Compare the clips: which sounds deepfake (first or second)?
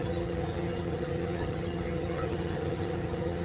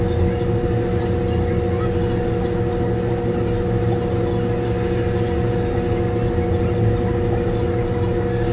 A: first